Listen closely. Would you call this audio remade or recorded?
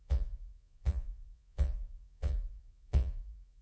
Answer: remade